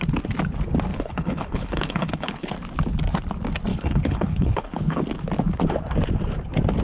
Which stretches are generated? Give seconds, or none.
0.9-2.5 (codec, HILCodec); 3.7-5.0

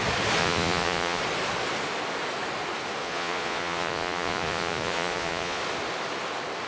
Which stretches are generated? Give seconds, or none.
0.4-1.2 (vocoder, Vocos); 3.0-5.6

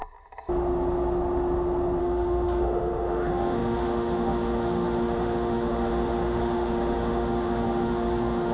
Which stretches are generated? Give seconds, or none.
2.0-8.5 (autoencoder, DAC-VAE)

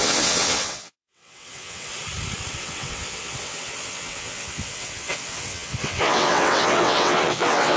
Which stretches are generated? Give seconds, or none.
0.0-1.9 (vocoder, WaveNeXt); 2.5-7.8

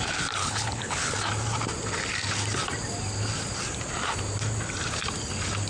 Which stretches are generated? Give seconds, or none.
0.4-1.1 (codec, HILCodec)

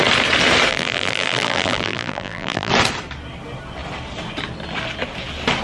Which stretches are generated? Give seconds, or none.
0.7-2.7 (vocoder, BigVGAN v2)